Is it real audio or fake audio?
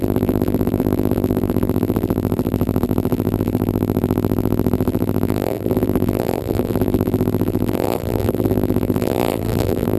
fake